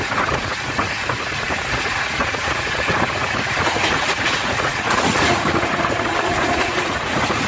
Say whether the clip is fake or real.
fake